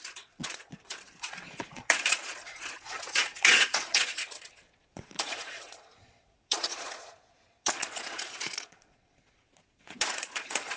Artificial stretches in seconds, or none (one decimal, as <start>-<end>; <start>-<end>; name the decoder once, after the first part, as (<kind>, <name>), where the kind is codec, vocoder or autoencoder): 0.0-10.8 (vocoder, Vocos)